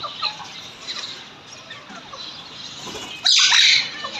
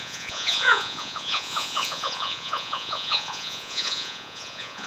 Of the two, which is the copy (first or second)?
second